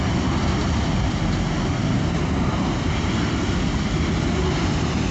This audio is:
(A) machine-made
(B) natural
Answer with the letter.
B